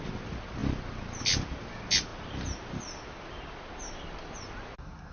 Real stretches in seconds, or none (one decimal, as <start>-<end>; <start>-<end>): 0.0-5.1